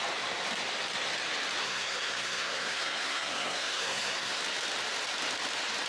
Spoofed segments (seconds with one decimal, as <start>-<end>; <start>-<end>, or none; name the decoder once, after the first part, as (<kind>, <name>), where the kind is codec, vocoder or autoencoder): 1.6-4.4 (codec, SNAC)